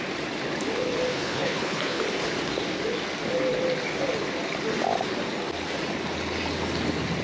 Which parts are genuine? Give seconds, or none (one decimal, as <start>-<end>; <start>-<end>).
0.0-1.1; 2.0-7.2

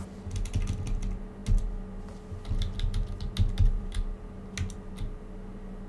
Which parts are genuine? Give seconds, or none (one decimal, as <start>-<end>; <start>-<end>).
0.0-5.9

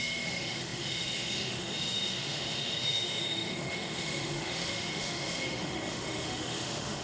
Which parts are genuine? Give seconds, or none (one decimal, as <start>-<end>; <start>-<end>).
none

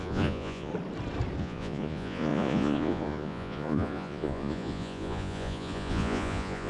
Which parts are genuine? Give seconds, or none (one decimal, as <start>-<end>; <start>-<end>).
0.7-1.4

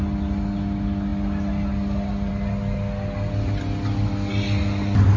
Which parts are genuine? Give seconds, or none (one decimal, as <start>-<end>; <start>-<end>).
0.0-5.2

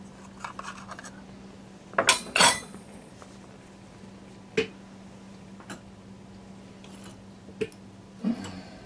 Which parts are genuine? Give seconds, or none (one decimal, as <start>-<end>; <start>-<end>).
0.0-2.1; 3.1-8.9

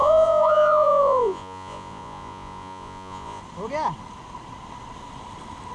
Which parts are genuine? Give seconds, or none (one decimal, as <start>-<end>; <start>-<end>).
3.4-5.7

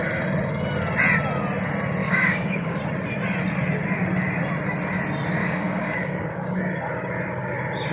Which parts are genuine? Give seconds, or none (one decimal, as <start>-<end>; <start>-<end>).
0.0-2.0; 2.8-5.4; 6.6-7.9